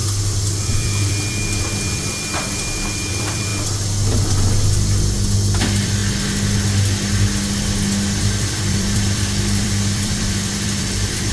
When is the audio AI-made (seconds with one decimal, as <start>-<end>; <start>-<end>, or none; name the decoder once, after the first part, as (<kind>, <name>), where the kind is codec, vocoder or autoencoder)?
0.0-3.5 (vocoder, BigVGAN v2); 5.6-6.0; 8.2-11.3